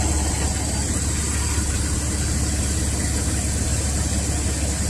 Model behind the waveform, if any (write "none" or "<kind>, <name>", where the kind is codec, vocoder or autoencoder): none